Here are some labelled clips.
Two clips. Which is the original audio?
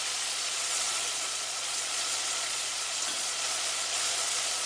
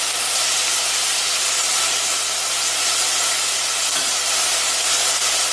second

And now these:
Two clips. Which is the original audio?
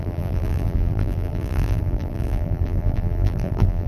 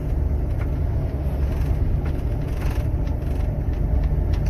second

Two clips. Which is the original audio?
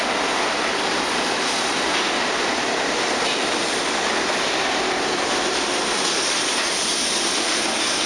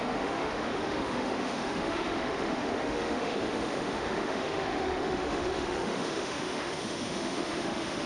first